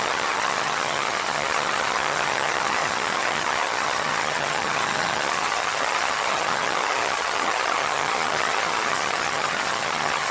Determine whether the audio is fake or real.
fake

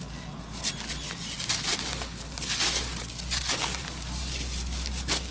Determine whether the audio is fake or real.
real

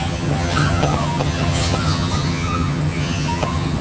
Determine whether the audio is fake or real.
fake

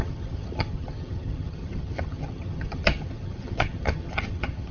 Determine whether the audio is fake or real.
fake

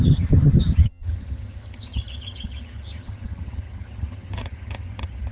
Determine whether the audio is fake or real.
fake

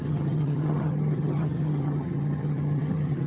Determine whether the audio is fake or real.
fake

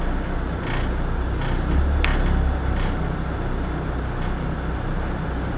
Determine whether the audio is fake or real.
real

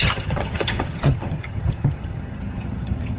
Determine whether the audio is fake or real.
fake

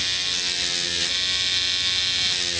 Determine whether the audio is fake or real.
real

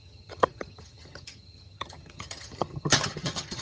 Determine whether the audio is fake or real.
fake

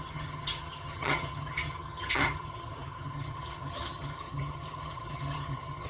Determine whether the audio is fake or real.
fake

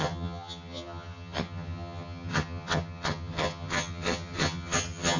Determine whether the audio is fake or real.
fake